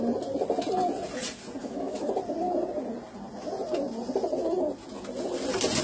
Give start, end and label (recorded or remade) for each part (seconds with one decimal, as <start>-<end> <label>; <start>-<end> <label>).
0.0-1.6 recorded; 1.6-2.1 remade; 2.1-5.8 recorded